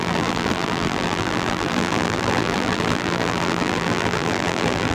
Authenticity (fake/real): fake